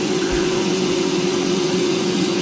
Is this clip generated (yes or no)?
yes